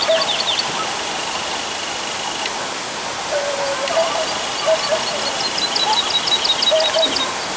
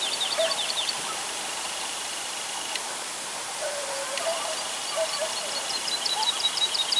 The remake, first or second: second